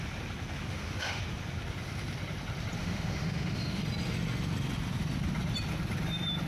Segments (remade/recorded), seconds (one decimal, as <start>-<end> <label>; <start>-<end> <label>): 0.0-0.7 recorded; 0.7-1.2 remade; 1.2-2.8 recorded; 2.8-3.8 remade; 3.8-6.5 recorded